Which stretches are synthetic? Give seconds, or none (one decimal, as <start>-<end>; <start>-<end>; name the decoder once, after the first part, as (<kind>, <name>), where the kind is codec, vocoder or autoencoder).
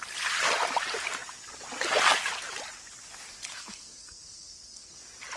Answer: 3.5-5.0 (codec, SNAC)